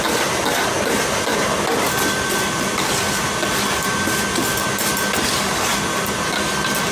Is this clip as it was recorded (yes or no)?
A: yes